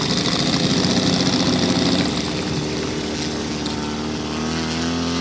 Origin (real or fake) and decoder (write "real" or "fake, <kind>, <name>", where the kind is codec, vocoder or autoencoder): real